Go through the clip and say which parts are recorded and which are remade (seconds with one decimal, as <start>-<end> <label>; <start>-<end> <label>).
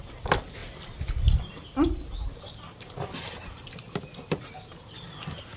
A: 0.0-5.6 recorded